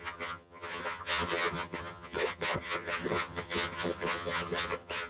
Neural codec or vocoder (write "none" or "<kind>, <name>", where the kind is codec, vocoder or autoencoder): vocoder, HiFi-GAN